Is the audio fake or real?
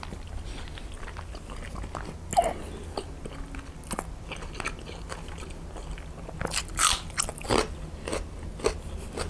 real